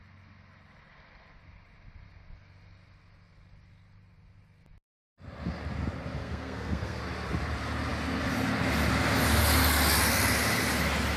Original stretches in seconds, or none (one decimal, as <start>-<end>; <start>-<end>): 0.0-6.2; 7.0-11.2